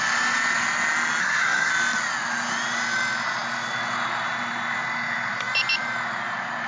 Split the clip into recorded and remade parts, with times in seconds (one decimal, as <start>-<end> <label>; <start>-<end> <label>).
0.0-1.2 recorded; 1.2-1.7 remade; 1.7-6.7 recorded